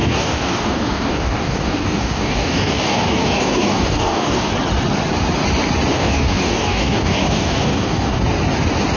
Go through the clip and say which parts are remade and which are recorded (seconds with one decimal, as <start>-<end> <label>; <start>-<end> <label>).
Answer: 0.0-4.5 remade; 4.5-5.9 recorded; 5.9-8.2 remade; 8.2-9.0 recorded

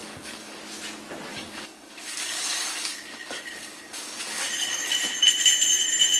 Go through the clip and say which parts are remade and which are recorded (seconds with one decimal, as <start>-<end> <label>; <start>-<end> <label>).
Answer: 0.0-0.6 remade; 0.6-1.3 recorded; 1.3-5.0 remade; 5.0-6.2 recorded

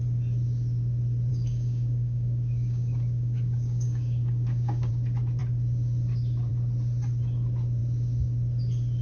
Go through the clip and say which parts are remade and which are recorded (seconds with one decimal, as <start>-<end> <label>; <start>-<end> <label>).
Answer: 0.0-1.3 recorded; 1.3-4.9 remade; 4.9-9.0 recorded

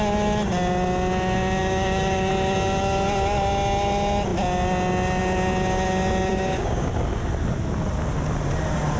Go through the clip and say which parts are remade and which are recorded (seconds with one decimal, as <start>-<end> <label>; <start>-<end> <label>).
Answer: 0.0-1.6 recorded; 1.6-2.3 remade; 2.3-6.3 recorded; 6.3-6.9 remade; 6.9-9.0 recorded

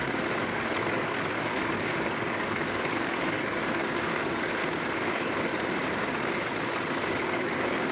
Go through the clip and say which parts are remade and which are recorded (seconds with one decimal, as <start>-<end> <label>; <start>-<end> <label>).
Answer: 0.0-4.6 remade; 4.6-5.1 recorded; 5.1-5.5 remade; 5.5-6.1 recorded; 6.1-7.9 remade